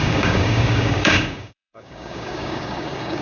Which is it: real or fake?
fake